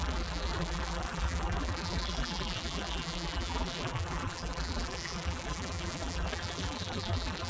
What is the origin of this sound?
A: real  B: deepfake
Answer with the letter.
B